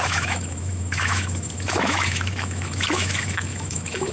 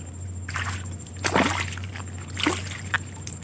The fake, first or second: first